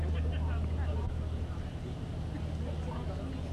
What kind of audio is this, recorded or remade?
recorded